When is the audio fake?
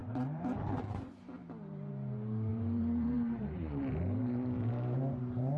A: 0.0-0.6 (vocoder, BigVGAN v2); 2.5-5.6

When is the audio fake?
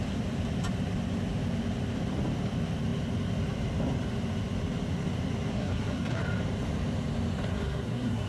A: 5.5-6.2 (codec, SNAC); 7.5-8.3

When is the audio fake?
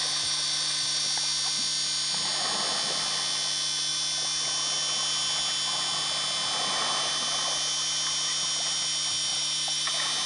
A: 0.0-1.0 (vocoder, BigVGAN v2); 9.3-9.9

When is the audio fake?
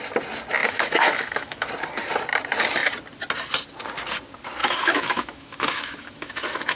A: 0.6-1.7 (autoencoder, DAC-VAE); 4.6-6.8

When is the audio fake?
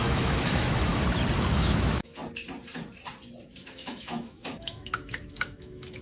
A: 0.0-0.9 (autoencoder, DAC-VAE); 1.5-2.2; 3.7-6.0